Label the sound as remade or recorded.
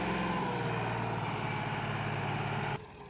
recorded